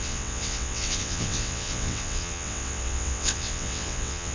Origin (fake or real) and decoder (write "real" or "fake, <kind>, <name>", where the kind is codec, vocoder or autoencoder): fake, vocoder, WaveNeXt